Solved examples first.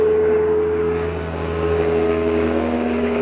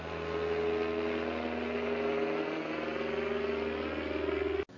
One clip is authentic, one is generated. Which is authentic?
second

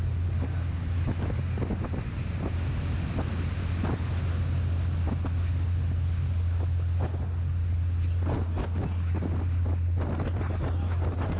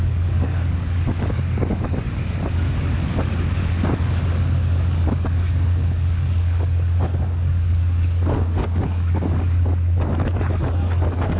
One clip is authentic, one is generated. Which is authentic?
first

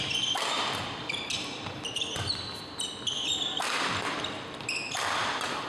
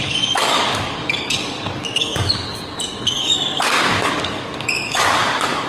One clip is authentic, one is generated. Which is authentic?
first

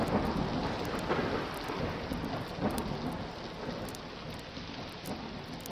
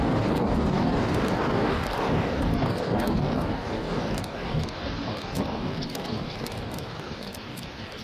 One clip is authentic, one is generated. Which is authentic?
first